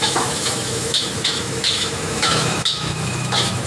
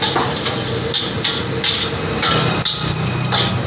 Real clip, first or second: second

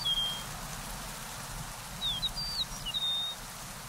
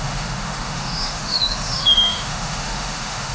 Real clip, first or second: first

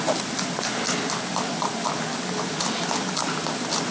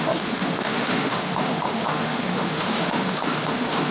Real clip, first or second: first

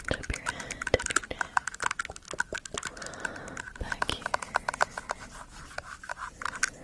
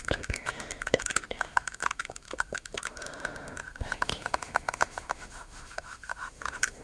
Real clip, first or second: first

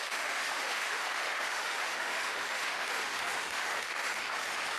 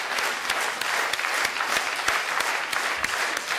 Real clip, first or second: second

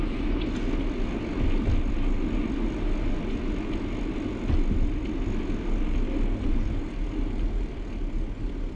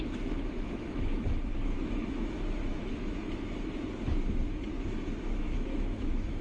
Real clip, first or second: first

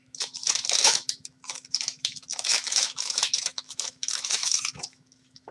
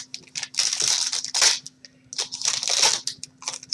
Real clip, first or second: second